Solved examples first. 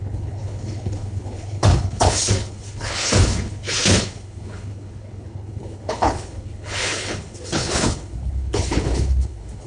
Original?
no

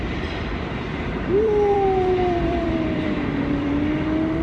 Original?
no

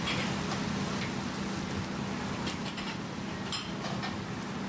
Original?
yes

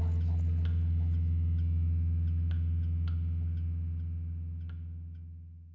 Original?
yes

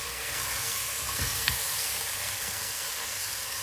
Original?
no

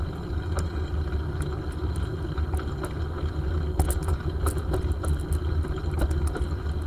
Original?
yes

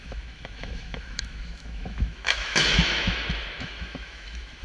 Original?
no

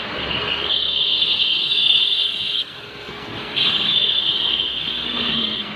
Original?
no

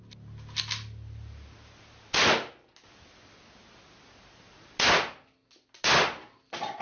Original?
yes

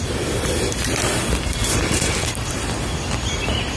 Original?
yes